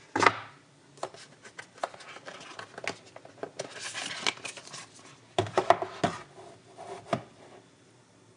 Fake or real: real